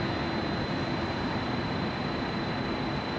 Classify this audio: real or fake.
real